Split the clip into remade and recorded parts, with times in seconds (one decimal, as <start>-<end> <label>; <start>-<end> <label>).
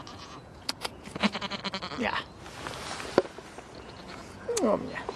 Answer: 0.0-1.6 remade; 1.6-3.7 recorded; 3.7-5.2 remade